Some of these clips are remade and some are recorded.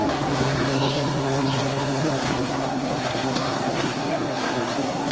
remade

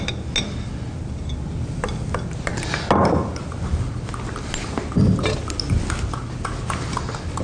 recorded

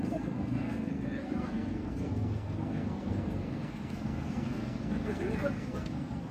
remade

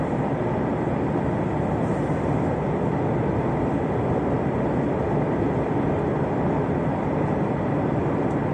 recorded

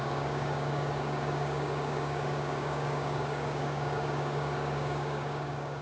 remade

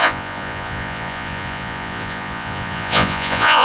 remade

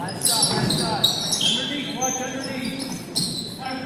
recorded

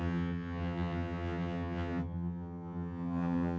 remade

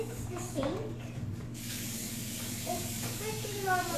remade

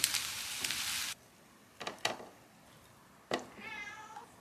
recorded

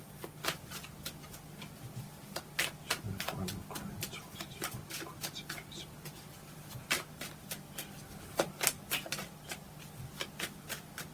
recorded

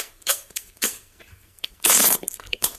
remade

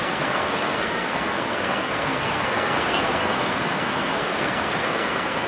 remade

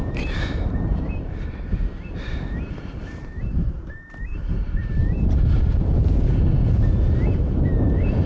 remade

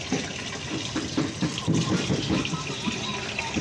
recorded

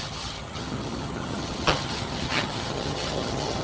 remade